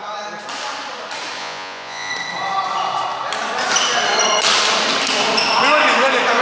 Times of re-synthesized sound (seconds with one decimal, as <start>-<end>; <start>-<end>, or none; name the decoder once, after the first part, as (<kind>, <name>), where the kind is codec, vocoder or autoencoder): 1.4-2.1 (vocoder, Vocos)